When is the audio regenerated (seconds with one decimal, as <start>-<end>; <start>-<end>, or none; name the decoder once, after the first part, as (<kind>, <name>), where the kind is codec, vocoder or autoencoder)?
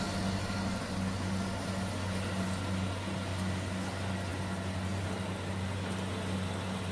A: none